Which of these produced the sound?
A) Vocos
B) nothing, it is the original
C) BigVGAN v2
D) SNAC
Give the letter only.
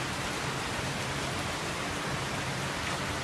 B